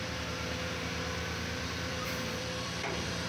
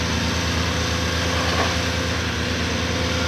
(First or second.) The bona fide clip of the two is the second